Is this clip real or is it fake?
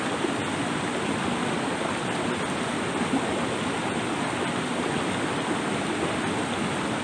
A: real